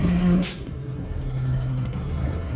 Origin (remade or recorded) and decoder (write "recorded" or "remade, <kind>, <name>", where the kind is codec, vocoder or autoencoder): remade, codec, SNAC